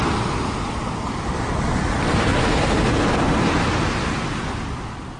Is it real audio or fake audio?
real